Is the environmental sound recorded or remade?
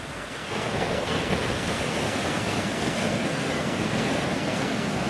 remade